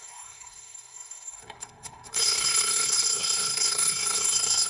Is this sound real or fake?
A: fake